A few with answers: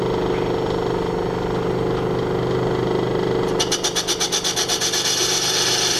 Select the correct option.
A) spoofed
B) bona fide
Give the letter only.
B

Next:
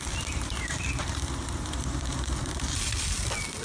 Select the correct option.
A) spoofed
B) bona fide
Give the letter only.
A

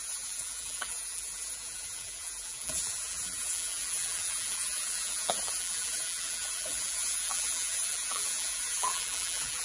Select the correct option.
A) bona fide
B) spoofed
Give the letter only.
B